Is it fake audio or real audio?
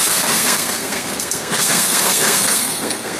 fake